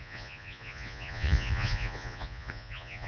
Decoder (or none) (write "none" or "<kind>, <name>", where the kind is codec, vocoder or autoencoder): vocoder, Vocos